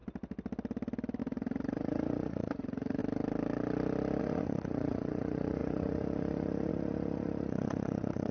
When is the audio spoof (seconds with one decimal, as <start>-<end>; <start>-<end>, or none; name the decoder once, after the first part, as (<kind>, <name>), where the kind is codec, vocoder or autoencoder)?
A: 1.2-3.0 (vocoder, Vocos); 4.2-8.3